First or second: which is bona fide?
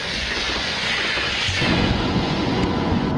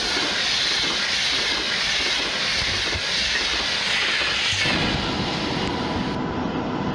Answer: second